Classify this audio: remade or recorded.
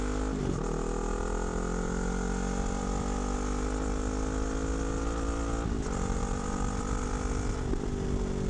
recorded